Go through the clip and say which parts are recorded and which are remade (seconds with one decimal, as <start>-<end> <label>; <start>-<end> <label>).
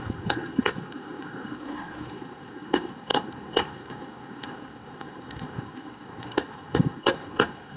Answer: 0.0-7.8 remade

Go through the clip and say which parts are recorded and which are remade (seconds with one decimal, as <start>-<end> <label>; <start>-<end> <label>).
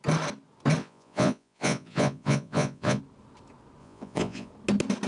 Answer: 0.0-0.8 recorded; 0.8-3.0 remade; 3.0-3.8 recorded; 3.8-4.5 remade; 4.5-5.1 recorded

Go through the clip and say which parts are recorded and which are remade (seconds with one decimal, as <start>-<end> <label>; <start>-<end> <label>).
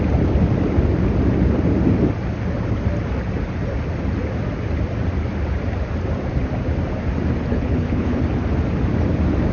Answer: 0.0-7.5 recorded; 7.5-8.2 remade; 8.2-9.5 recorded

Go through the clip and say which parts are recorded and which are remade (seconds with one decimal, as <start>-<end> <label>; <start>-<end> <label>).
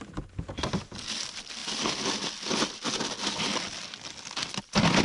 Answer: 0.0-5.0 recorded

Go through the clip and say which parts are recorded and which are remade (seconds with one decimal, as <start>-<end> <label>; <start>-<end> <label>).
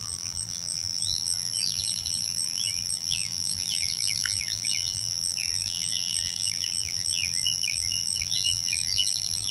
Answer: 0.0-9.5 remade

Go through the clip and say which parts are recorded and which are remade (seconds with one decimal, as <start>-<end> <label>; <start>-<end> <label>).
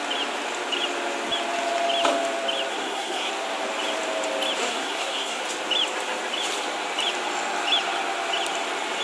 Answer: 0.0-2.7 recorded; 2.7-3.3 remade; 3.3-4.6 recorded; 4.6-5.4 remade; 5.4-9.0 recorded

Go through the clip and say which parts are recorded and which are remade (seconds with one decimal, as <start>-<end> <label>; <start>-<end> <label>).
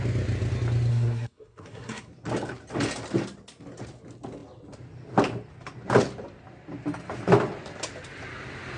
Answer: 0.0-0.9 recorded; 0.9-2.1 remade; 2.1-8.8 recorded